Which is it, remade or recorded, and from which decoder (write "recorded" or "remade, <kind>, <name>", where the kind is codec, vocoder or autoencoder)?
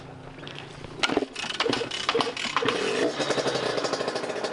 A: recorded